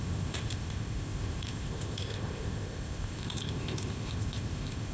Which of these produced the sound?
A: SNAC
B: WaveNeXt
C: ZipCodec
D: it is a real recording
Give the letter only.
C